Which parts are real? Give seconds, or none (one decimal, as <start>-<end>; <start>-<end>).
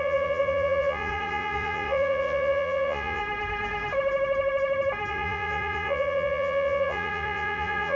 3.2-5.1